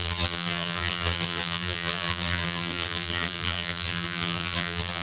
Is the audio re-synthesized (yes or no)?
yes